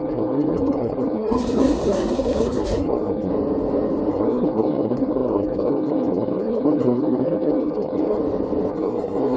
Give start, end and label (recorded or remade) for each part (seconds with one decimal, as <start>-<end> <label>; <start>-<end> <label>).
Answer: 0.0-3.3 remade; 3.3-4.1 recorded; 4.1-8.2 remade; 8.2-8.7 recorded; 8.7-9.4 remade